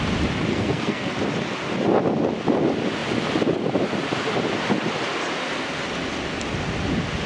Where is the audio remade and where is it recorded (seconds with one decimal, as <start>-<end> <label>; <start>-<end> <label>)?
0.0-0.5 recorded; 0.5-1.1 remade; 1.1-7.3 recorded